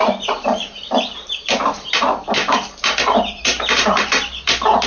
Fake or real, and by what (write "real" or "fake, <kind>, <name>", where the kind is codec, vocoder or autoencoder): fake, vocoder, BigVGAN v2